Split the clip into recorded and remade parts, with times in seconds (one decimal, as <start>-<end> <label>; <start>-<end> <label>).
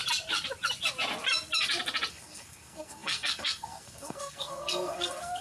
0.0-2.1 recorded; 2.1-5.4 remade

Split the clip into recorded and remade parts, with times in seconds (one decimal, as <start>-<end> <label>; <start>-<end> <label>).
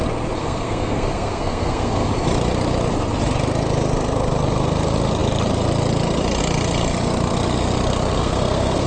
0.0-0.4 recorded; 0.4-2.1 remade; 2.1-8.2 recorded; 8.2-8.9 remade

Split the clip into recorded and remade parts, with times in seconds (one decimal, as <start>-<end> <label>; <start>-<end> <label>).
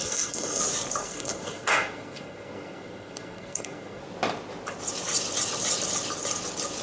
0.0-0.6 remade; 0.6-1.0 recorded; 1.0-4.0 remade; 4.0-6.8 recorded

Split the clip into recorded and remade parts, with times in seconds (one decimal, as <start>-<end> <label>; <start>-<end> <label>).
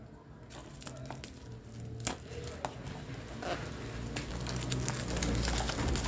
0.0-6.1 recorded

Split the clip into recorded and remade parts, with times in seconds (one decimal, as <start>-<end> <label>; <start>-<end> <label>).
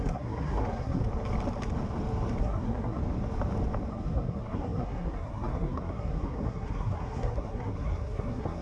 0.0-1.0 remade; 1.0-2.4 recorded; 2.4-3.0 remade; 3.0-3.9 recorded; 3.9-8.6 remade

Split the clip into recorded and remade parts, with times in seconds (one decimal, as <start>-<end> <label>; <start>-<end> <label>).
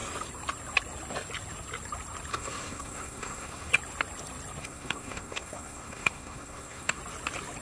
0.0-2.3 recorded; 2.3-3.7 remade; 3.7-4.6 recorded; 4.6-7.0 remade; 7.0-7.6 recorded